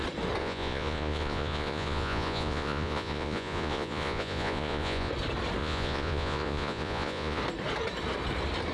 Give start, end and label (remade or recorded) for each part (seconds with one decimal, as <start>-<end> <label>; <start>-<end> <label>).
0.0-0.4 recorded; 0.4-5.1 remade; 5.1-5.6 recorded; 5.6-7.4 remade; 7.4-8.7 recorded